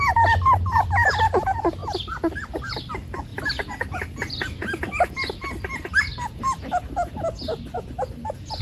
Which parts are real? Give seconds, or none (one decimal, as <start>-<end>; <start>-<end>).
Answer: 0.0-8.6